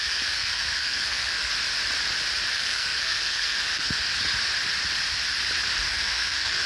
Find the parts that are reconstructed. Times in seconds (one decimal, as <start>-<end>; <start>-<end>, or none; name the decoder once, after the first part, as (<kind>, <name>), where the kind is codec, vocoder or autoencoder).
0.0-1.5 (codec, SNAC); 2.5-4.1; 5.9-6.7